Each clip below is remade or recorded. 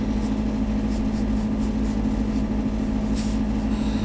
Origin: recorded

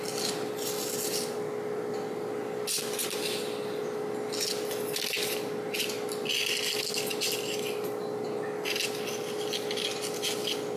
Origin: recorded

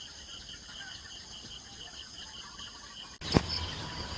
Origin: recorded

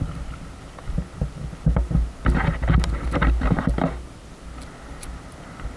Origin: recorded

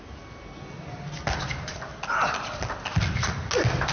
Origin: recorded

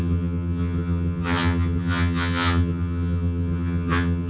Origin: remade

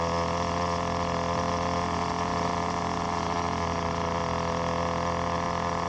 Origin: recorded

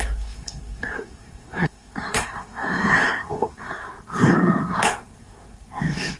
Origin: remade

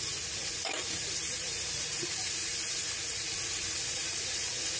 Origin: remade